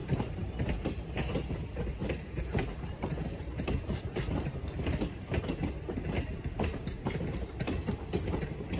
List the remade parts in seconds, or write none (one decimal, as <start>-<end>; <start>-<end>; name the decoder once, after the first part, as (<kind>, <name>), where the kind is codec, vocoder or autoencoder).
0.0-0.6 (vocoder, BigVGAN v2); 2.0-5.7; 6.3-7.6